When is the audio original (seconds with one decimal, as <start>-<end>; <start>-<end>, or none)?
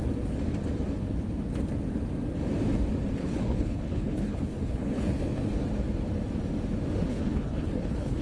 0.0-3.2; 5.4-7.1